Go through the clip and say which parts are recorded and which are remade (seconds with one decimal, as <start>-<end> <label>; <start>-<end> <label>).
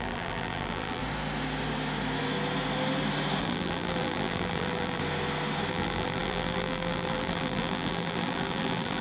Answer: 0.0-1.0 remade; 1.0-3.4 recorded; 3.4-5.0 remade; 5.0-5.7 recorded; 5.7-9.0 remade